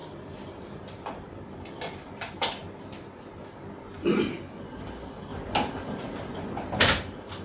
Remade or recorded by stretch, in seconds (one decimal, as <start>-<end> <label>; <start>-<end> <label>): 0.0-2.6 remade; 2.6-4.0 recorded; 4.0-5.3 remade; 5.3-6.8 recorded; 6.8-7.4 remade